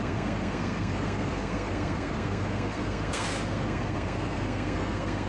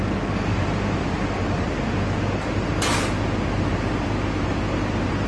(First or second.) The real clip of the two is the second